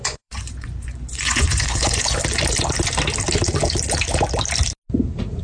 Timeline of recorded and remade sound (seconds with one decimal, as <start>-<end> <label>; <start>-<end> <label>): 0.0-2.2 remade; 2.2-5.4 recorded